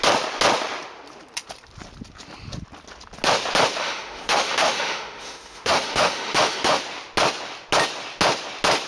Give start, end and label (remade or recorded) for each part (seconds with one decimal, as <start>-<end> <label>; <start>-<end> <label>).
0.0-3.8 recorded; 3.8-6.8 remade; 6.8-8.9 recorded